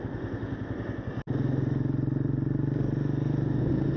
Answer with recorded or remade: recorded